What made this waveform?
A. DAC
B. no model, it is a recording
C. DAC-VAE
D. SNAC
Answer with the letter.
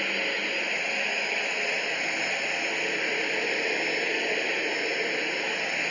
B